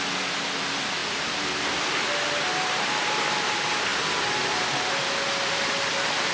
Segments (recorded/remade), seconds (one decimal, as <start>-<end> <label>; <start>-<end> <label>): 0.0-6.3 recorded